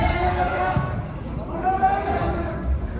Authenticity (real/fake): fake